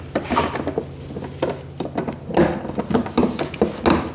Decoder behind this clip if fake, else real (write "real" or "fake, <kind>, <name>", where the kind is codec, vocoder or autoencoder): real